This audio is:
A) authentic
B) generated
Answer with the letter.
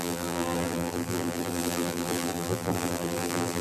B